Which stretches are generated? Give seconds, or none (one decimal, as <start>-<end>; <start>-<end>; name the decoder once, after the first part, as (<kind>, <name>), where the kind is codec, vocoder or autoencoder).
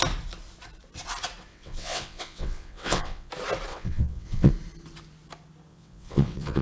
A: 1.5-3.3 (vocoder, WaveNeXt); 3.7-4.5; 5.7-6.6